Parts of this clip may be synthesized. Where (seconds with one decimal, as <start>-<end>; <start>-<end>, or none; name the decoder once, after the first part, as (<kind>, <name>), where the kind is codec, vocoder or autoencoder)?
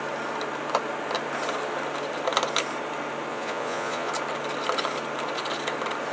3.3-4.1 (vocoder, Vocos)